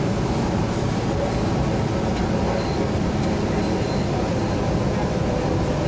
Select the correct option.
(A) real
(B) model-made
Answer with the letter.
A